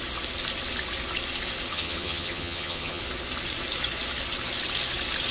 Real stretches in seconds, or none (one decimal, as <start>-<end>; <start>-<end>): 0.0-1.7; 3.0-5.3